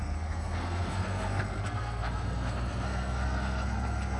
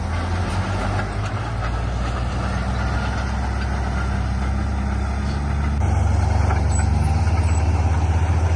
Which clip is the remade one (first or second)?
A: first